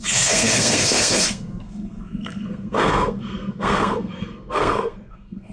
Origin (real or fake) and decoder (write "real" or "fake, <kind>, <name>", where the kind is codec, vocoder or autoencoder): fake, codec, SNAC